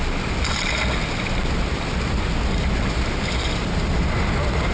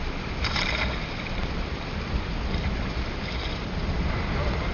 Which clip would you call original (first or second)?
first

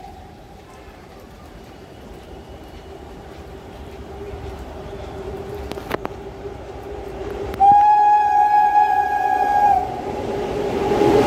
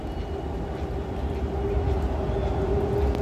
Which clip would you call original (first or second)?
second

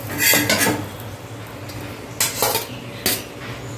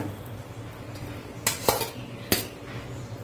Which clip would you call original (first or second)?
first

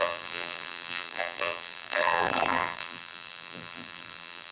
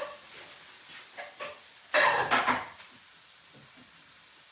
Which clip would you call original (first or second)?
second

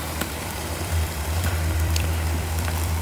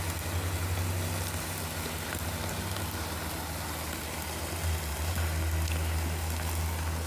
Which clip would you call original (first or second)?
second